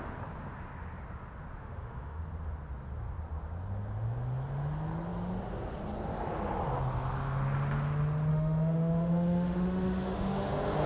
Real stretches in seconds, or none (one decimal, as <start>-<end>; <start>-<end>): 0.0-1.6; 2.2-8.3; 10.5-10.9